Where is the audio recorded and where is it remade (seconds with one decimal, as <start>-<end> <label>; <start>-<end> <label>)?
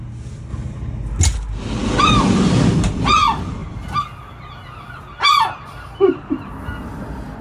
0.0-1.8 recorded; 1.8-2.7 remade; 2.7-3.6 recorded; 3.6-4.6 remade; 4.6-7.4 recorded